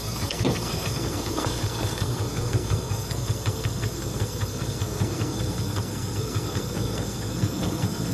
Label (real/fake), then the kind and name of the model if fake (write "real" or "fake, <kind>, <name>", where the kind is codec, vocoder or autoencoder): fake, codec, SNAC